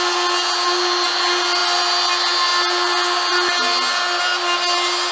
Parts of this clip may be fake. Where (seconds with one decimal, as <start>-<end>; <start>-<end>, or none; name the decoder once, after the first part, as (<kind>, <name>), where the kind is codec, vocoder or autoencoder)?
none